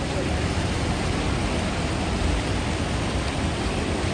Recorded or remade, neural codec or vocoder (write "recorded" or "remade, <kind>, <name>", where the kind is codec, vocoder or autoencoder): recorded